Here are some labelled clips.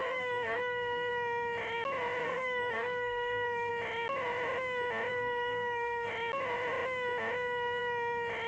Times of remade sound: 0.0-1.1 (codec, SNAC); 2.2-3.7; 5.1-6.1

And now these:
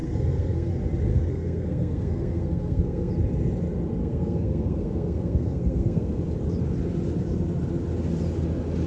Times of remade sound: 0.0-0.7 (codec, SNAC); 1.1-3.1; 4.0-6.2

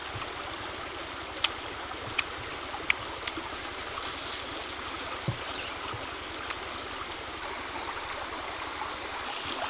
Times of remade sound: none

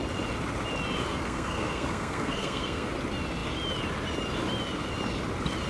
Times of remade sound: 1.1-2.9 (codec, SNAC)

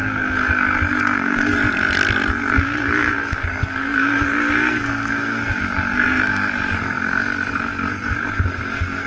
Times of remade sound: 0.0-1.6 (codec, SNAC); 2.3-9.1